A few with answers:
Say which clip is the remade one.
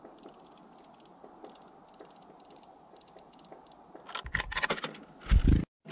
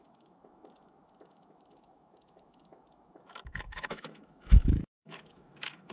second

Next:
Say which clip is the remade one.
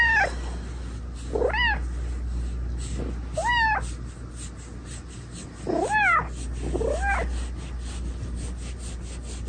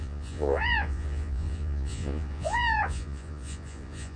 second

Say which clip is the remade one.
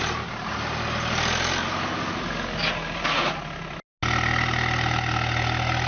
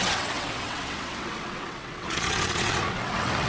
second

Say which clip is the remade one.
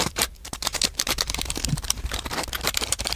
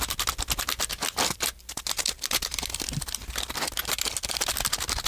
first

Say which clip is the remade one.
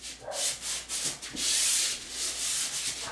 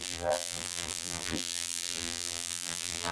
second